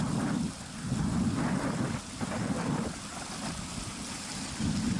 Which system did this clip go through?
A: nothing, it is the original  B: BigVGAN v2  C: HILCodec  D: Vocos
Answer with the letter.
B